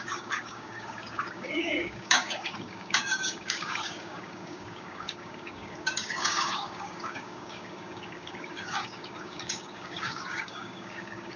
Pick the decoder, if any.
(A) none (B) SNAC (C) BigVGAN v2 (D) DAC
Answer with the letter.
D